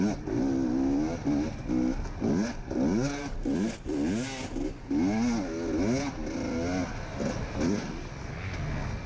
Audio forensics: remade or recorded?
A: recorded